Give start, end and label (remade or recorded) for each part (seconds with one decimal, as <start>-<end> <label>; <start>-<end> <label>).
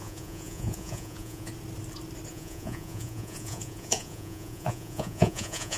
0.0-1.5 remade; 1.5-2.3 recorded; 2.3-5.8 remade